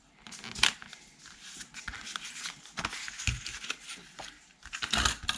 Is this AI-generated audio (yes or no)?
no